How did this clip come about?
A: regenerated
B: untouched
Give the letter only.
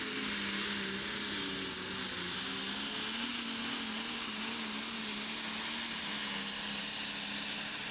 B